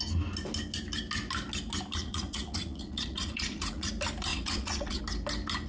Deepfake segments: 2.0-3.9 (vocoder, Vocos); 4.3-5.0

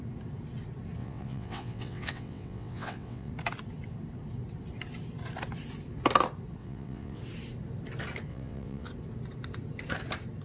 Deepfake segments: 1.0-3.3 (vocoder, WaveNeXt); 6.6-7.2; 8.3-8.9

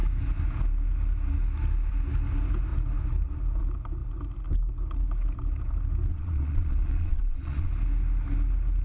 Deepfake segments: 6.1-7.7 (vocoder, Vocos)

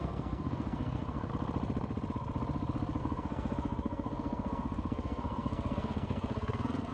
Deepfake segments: 0.0-1.3 (codec, SNAC); 3.0-6.9

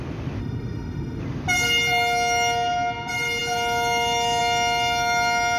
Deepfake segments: 0.4-1.2 (autoencoder, DAC-VAE)

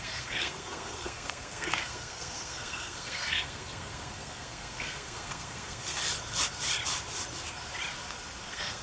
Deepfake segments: 0.0-6.0 (codec, SNAC); 8.4-8.8

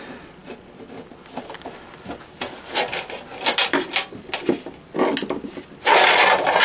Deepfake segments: none

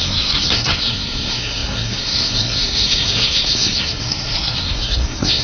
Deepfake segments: 0.0-5.4 (codec, SNAC)